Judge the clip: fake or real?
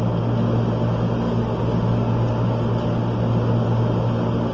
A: real